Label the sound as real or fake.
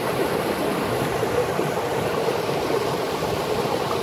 real